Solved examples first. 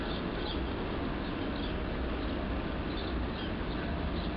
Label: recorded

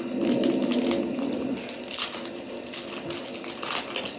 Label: recorded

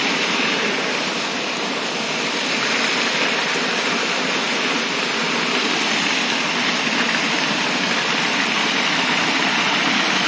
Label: recorded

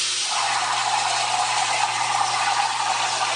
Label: recorded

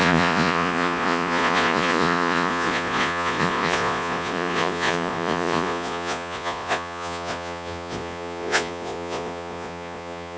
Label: remade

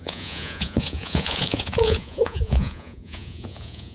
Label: remade